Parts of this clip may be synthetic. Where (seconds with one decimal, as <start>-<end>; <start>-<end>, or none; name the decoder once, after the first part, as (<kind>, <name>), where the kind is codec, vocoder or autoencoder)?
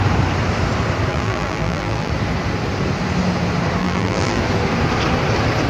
1.1-2.1 (vocoder, BigVGAN v2); 3.8-4.4